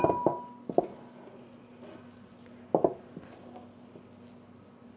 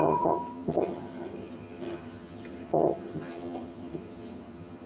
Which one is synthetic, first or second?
second